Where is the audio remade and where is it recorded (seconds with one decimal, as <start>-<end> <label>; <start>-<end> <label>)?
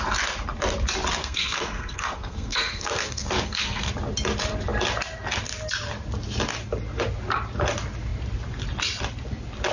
0.0-1.2 recorded; 1.2-3.9 remade; 3.9-9.7 recorded